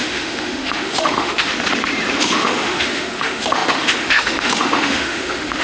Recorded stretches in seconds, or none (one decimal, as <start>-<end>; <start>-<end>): 1.5-2.2